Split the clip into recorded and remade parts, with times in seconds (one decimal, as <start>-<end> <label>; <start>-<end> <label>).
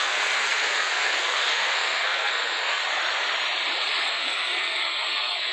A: 0.0-2.8 remade; 2.8-4.1 recorded; 4.1-5.5 remade